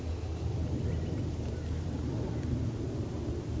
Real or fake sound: real